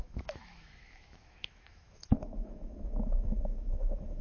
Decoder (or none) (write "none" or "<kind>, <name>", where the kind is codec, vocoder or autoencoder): autoencoder, DAC-VAE